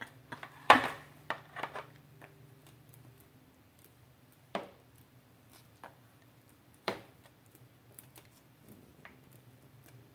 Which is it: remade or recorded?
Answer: remade